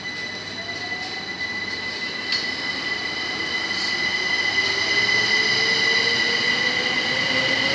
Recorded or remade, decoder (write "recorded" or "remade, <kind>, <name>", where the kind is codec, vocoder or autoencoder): recorded